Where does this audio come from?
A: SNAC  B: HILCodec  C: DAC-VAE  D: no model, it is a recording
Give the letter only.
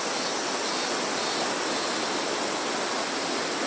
D